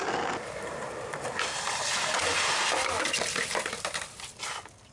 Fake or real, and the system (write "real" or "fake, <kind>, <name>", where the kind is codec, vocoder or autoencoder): real